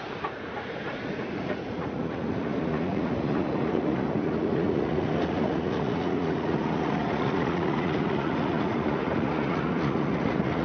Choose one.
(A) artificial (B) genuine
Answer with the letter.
A